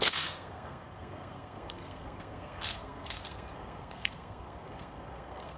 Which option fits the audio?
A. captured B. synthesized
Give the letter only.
B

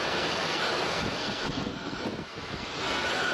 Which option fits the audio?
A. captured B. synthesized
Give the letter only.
B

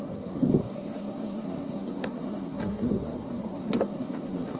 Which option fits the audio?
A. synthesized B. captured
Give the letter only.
A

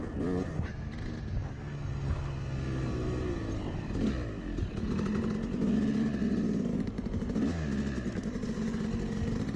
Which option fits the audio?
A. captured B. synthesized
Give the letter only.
A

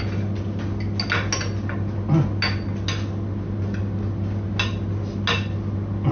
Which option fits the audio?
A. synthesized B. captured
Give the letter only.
B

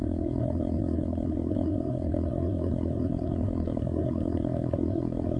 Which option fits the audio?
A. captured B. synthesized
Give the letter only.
B